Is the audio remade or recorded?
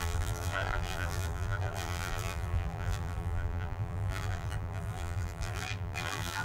remade